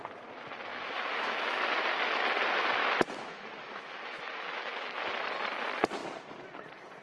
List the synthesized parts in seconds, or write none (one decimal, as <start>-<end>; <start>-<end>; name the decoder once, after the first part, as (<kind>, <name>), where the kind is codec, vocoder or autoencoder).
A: 0.7-1.6 (autoencoder, DAC-VAE); 2.8-5.0